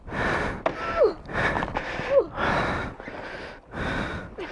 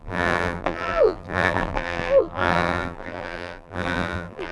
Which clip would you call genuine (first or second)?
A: first